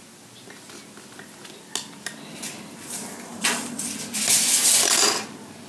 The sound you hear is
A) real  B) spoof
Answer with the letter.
A